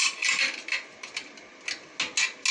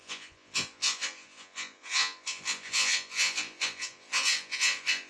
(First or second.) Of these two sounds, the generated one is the second